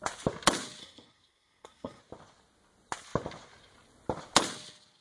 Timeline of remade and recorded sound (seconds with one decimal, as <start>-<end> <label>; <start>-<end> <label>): 0.0-0.8 recorded; 0.8-2.0 remade; 2.0-5.0 recorded